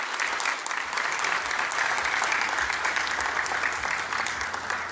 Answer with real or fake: real